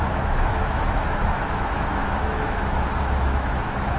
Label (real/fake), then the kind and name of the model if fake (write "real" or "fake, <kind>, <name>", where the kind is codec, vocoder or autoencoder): fake, autoencoder, DAC-VAE